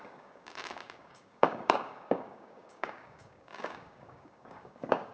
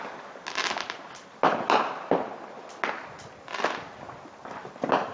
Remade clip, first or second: first